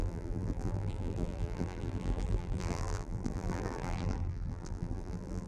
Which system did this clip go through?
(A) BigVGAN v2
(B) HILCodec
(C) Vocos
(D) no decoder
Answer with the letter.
A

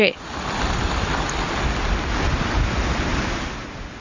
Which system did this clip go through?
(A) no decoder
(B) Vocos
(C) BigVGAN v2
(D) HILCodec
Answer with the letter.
A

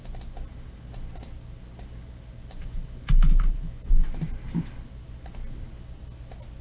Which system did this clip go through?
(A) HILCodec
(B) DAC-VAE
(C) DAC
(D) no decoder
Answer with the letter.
D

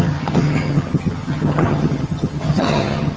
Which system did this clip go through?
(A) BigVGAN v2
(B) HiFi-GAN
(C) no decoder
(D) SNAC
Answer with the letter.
B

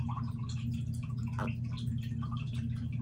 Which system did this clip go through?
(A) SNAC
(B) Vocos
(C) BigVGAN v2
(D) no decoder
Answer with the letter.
D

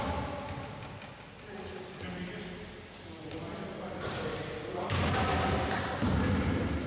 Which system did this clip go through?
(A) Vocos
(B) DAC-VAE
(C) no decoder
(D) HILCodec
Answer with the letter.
C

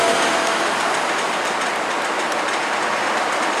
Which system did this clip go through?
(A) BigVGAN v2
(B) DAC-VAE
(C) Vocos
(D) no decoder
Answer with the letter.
D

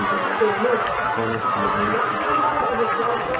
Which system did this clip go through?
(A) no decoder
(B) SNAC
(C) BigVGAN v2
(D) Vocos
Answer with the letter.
A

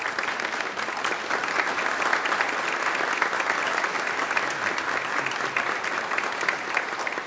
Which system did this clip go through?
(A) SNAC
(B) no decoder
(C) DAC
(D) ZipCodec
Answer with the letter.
B